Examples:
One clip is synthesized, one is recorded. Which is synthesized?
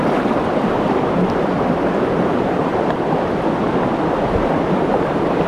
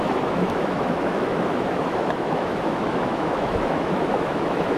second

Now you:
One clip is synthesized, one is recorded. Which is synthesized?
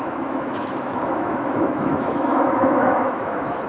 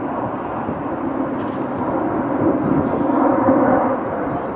first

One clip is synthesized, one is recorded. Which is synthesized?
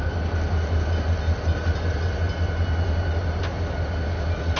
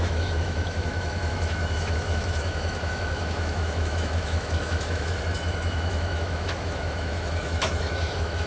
second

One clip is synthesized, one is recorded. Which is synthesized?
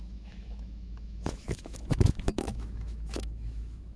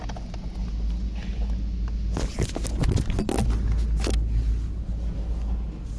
first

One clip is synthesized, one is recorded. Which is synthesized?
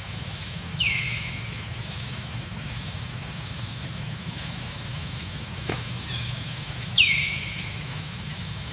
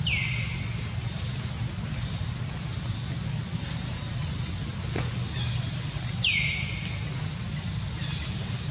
first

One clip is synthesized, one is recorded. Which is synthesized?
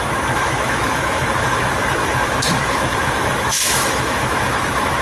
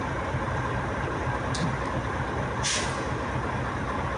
first